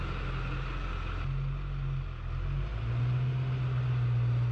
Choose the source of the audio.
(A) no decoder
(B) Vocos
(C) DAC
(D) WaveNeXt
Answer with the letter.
A